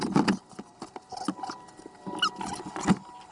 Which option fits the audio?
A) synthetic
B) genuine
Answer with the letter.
B